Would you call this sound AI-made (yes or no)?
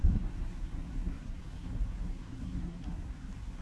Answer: yes